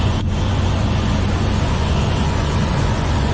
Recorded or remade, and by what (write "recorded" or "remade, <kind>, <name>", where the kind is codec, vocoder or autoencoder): remade, vocoder, Vocos